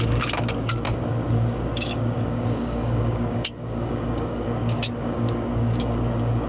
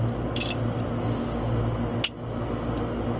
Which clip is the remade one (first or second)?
first